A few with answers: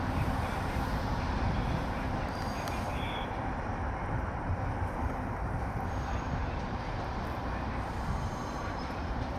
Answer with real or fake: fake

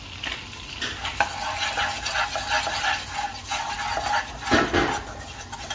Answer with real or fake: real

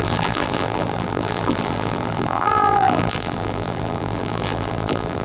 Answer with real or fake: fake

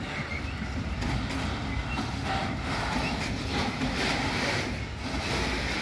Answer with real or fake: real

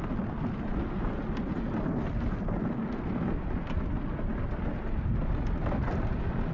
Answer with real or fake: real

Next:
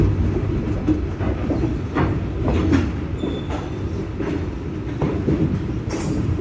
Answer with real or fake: real